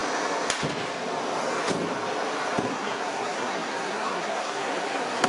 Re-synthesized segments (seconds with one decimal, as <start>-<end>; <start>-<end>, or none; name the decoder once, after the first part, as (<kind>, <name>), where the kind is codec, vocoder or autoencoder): 2.7-5.3 (codec, SNAC)